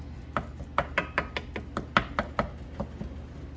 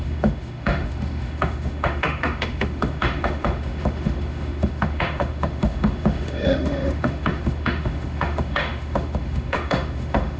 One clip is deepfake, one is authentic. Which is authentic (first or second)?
first